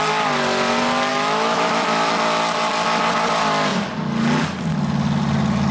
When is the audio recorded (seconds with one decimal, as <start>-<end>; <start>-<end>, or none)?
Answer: 0.0-1.1; 2.1-5.7